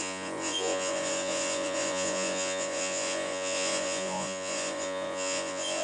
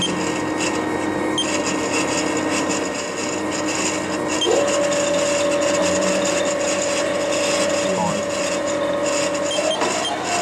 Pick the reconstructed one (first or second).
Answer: first